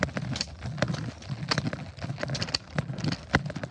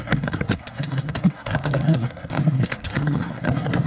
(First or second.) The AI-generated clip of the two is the second